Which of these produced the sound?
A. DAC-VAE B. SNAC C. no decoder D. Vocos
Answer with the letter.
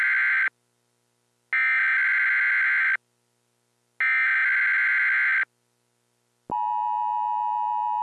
C